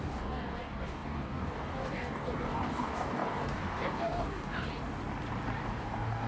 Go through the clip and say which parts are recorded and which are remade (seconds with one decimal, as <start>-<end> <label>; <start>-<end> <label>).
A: 0.0-4.7 remade; 4.7-5.8 recorded; 5.8-6.3 remade